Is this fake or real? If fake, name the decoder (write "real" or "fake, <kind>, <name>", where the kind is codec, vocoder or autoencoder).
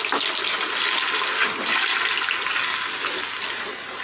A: real